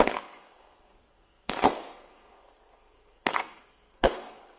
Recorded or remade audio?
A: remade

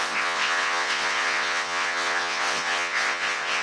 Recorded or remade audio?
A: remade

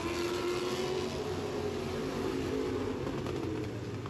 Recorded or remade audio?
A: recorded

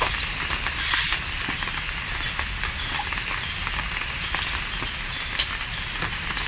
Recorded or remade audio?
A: recorded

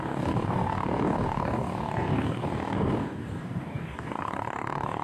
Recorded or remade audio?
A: remade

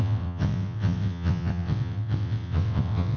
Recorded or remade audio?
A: remade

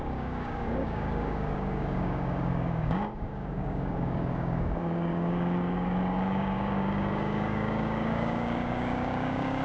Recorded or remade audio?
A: remade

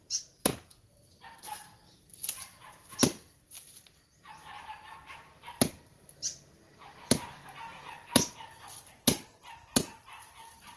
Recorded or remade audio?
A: recorded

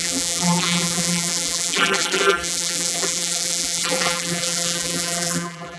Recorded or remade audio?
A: remade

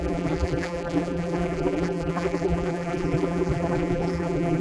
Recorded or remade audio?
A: remade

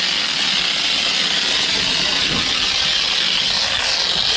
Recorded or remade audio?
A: recorded